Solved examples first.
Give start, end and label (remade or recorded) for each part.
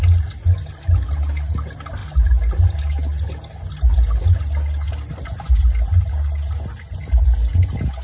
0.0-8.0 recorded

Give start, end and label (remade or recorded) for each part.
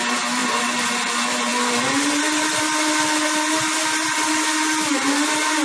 0.0-0.4 recorded; 0.4-1.1 remade; 1.1-5.6 recorded